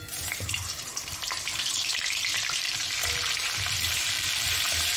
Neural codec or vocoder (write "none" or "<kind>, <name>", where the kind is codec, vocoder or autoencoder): vocoder, BigVGAN v2